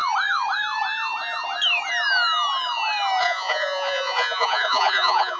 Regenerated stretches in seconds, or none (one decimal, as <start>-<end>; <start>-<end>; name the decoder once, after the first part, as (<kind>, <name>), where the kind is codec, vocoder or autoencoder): 3.2-5.4 (vocoder, Vocos)